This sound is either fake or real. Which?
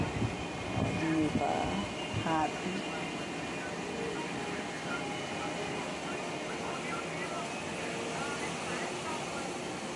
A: real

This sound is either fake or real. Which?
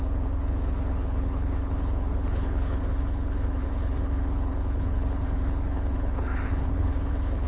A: fake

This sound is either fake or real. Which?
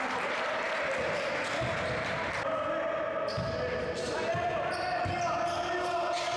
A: real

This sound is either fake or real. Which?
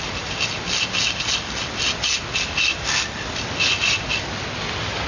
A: real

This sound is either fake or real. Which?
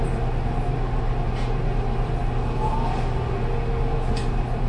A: real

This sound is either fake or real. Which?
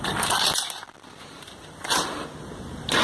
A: real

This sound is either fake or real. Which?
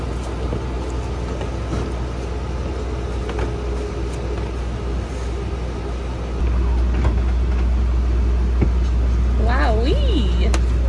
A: real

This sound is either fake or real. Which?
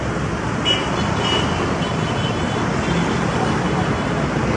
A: real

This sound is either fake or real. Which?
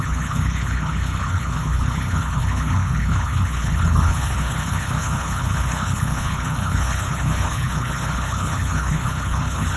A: fake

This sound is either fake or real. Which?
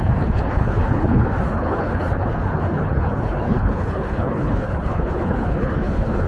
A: fake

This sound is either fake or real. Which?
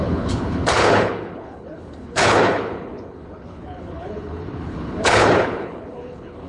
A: fake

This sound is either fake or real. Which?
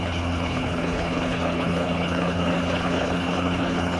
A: fake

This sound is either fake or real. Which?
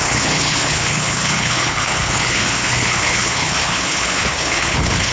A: fake